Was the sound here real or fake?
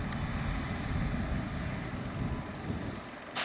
real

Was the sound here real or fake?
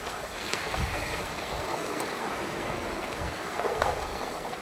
fake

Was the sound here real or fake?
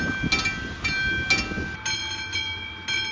real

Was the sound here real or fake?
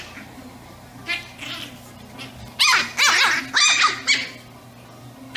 real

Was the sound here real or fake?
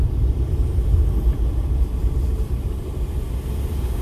real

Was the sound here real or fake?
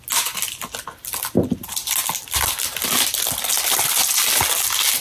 real